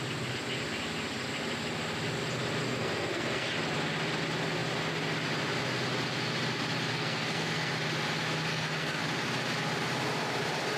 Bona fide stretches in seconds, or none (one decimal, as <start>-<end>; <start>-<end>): 0.0-2.6; 3.5-6.9; 7.7-8.5; 9.0-10.8